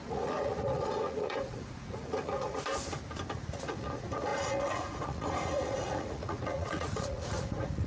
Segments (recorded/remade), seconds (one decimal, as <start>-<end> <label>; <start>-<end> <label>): 0.0-2.7 remade; 2.7-3.3 recorded; 3.3-7.9 remade